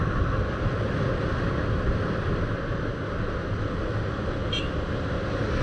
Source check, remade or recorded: recorded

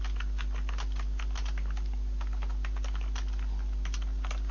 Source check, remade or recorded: recorded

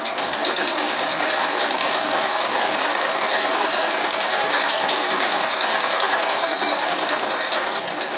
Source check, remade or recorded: remade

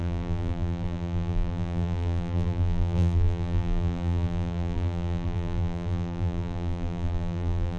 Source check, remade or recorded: remade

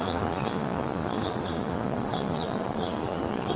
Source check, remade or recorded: remade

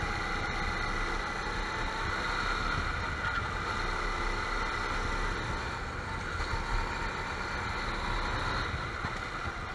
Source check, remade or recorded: recorded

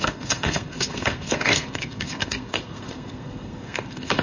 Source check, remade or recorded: remade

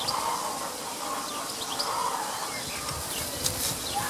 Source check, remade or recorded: recorded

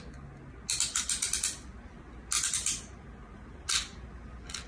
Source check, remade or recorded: recorded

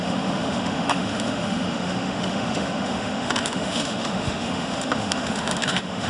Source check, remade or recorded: remade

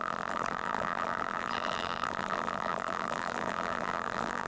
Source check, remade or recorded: remade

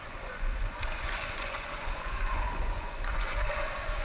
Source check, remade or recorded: remade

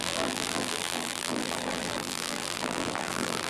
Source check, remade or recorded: remade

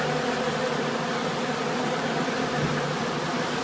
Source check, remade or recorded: recorded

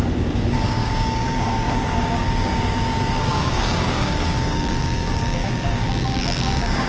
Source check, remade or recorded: remade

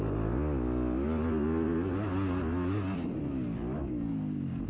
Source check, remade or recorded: recorded